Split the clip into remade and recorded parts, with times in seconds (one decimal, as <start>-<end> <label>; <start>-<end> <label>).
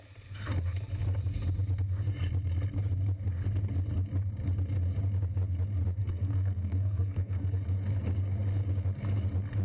0.0-6.0 recorded; 6.0-7.6 remade; 7.6-9.6 recorded